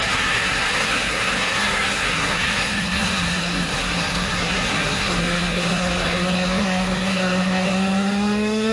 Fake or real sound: fake